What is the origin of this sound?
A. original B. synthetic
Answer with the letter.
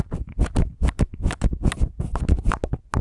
A